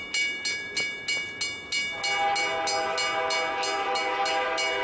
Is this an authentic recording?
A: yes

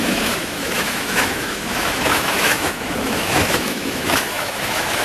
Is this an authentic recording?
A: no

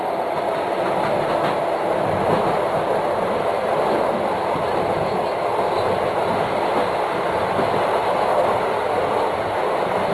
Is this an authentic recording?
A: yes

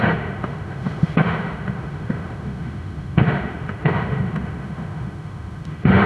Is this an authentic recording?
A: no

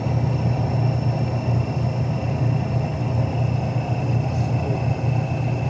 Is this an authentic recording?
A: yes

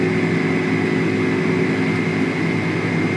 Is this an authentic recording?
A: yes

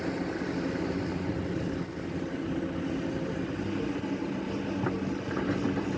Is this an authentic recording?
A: yes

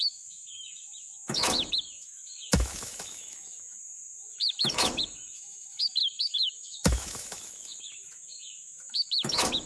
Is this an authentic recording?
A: no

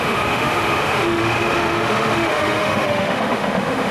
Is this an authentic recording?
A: no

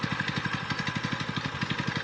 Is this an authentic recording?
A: yes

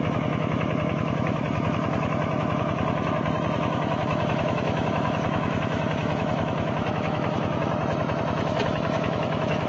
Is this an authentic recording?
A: no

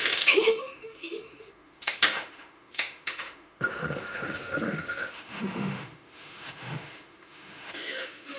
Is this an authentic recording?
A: no